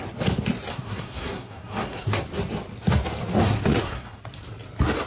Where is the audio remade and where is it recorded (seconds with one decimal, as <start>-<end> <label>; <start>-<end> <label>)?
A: 0.0-0.7 recorded; 0.7-2.2 remade; 2.2-3.4 recorded; 3.4-4.2 remade; 4.2-5.1 recorded